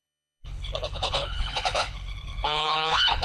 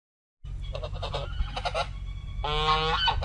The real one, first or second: second